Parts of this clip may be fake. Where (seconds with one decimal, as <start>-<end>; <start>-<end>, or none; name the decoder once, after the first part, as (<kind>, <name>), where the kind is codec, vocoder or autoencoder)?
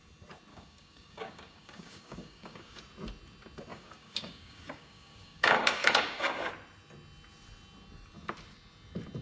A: 0.5-2.8 (codec, DAC); 3.7-6.5